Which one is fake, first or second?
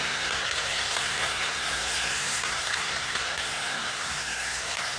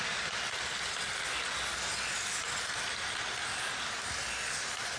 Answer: first